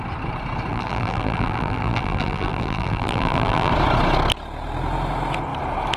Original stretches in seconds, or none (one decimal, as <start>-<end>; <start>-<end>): 0.0-0.7; 3.7-6.0